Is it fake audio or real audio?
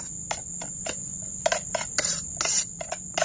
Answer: real